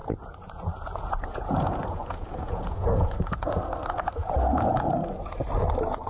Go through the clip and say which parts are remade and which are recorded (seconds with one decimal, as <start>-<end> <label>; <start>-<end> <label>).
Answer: 0.0-3.6 remade; 3.6-4.2 recorded; 4.2-4.9 remade; 4.9-6.1 recorded